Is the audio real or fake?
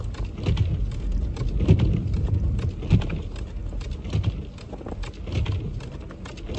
real